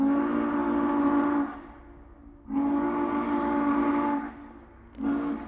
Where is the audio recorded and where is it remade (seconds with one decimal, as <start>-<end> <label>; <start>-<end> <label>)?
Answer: 0.0-5.5 recorded